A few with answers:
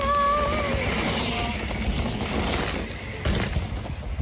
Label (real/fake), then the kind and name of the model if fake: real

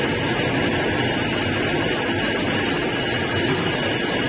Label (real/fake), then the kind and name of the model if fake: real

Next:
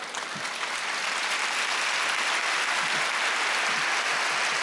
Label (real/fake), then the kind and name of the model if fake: real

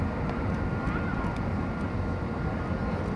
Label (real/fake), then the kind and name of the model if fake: real